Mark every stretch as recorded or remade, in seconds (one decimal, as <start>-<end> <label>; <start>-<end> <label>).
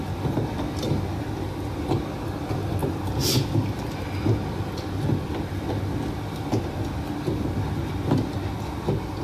0.0-9.2 recorded